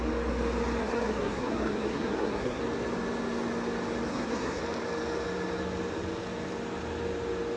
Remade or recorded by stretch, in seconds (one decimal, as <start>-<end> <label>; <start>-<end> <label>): 0.0-0.8 recorded; 0.8-2.6 remade; 2.6-4.1 recorded; 4.1-4.6 remade; 4.6-7.6 recorded